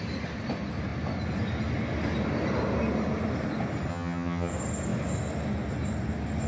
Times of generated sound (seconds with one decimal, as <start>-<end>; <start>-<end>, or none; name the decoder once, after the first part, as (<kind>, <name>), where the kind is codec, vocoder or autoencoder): 3.9-4.5 (vocoder, HiFi-GAN)